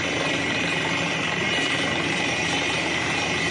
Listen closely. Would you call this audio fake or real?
fake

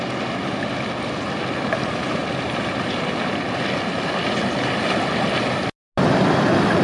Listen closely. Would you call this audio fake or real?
real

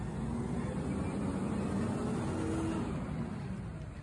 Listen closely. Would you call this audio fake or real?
real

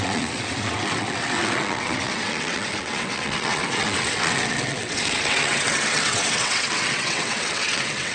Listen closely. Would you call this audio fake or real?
fake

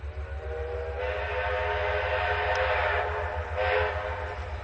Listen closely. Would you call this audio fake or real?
real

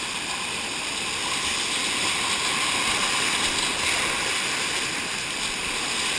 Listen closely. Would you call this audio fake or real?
real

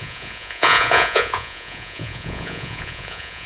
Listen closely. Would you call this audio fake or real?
fake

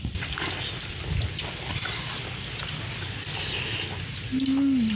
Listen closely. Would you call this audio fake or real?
real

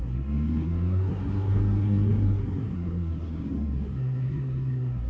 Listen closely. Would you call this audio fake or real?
fake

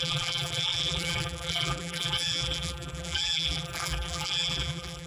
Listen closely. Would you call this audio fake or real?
fake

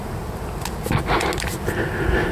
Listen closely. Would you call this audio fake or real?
real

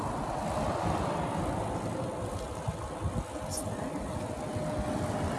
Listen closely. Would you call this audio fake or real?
real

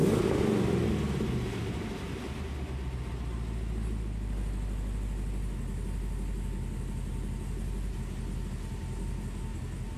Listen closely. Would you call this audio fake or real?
real